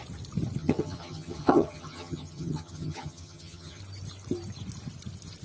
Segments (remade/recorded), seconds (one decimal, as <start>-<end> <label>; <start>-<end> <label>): 0.0-0.6 recorded; 0.6-3.8 remade; 3.8-5.4 recorded